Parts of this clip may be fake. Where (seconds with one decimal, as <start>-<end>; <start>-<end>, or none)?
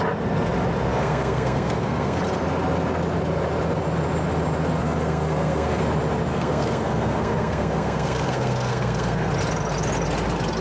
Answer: 0.9-2.2; 4.8-5.8; 6.3-9.3